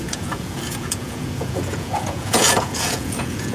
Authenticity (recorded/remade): remade